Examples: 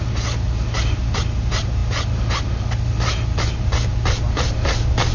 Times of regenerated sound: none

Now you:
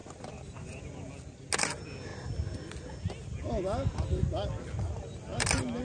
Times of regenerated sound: 0.0-1.1 (vocoder, BigVGAN v2)